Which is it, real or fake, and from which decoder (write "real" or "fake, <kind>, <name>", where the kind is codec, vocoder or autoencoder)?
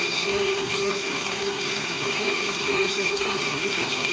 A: fake, codec, SNAC